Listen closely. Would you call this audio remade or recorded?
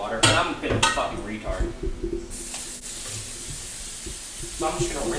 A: recorded